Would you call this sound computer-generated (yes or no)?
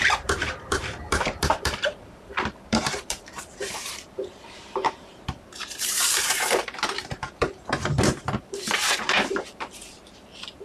yes